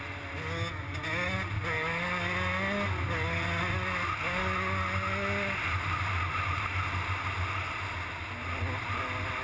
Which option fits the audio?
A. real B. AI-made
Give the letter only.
A